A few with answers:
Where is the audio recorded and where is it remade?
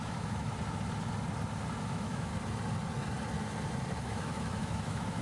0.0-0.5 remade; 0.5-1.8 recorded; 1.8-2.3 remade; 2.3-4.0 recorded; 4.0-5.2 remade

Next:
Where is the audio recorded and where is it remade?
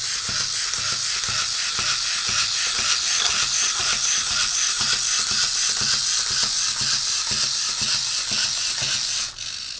0.0-3.8 recorded; 3.8-6.0 remade; 6.0-9.8 recorded